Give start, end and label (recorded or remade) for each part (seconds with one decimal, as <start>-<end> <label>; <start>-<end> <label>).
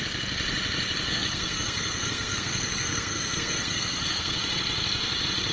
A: 0.0-1.1 recorded; 1.1-4.4 remade; 4.4-5.5 recorded